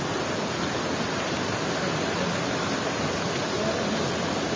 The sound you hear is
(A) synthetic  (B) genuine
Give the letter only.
B